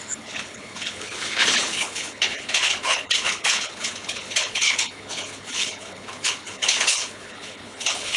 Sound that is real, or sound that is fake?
fake